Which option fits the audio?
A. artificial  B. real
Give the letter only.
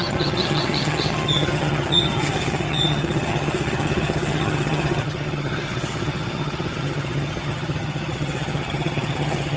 A